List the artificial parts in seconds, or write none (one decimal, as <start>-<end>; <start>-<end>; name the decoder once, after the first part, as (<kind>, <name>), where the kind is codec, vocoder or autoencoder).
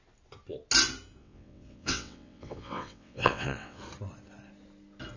1.2-3.8 (vocoder, WaveNeXt)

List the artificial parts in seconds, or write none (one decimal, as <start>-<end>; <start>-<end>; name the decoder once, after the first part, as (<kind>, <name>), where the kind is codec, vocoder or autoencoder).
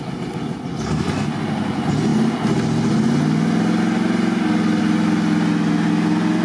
none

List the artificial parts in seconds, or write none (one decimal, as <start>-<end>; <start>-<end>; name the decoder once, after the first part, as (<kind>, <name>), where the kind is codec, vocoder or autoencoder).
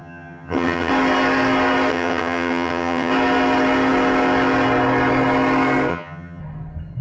0.0-0.9 (vocoder, HiFi-GAN); 1.9-3.1; 5.9-6.4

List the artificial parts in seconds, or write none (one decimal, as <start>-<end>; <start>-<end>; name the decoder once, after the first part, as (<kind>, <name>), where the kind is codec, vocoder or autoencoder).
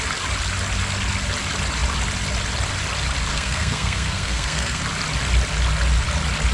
3.3-4.8 (codec, SNAC)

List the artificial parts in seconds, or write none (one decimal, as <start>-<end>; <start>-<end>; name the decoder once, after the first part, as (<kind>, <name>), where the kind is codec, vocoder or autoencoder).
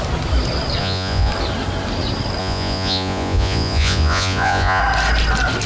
0.8-1.3 (vocoder, Vocos); 2.4-4.8